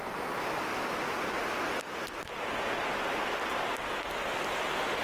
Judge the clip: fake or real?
real